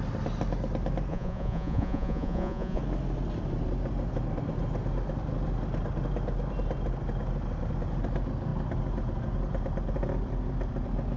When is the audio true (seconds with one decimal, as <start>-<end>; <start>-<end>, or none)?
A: 0.0-1.1; 2.8-11.2